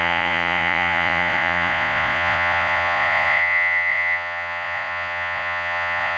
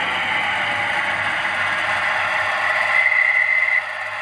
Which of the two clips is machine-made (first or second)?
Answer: first